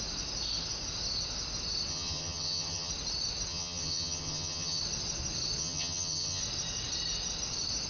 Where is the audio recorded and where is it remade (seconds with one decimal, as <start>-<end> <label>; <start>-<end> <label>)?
0.0-1.9 recorded; 1.9-2.9 remade; 2.9-3.5 recorded; 3.5-4.8 remade; 4.8-5.6 recorded; 5.6-6.4 remade; 6.4-7.9 recorded